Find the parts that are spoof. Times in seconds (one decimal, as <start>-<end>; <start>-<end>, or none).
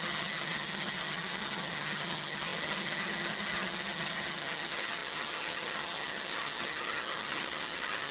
0.0-8.1